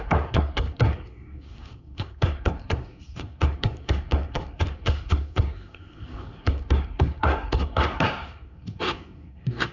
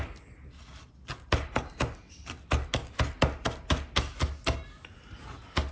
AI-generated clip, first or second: first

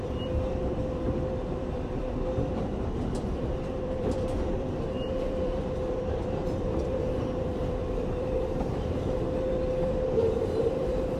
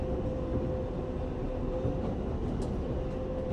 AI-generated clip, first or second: first